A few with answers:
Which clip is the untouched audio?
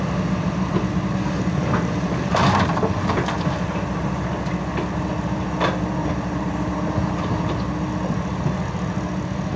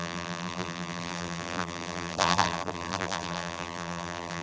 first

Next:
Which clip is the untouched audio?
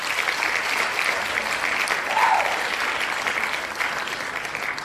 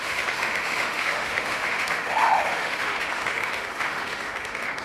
first